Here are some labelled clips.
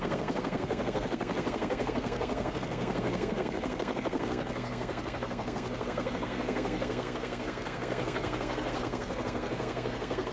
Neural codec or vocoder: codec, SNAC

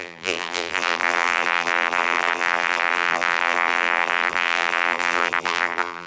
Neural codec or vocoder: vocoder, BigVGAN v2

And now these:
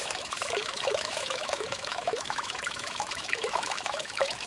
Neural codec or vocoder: autoencoder, DAC-VAE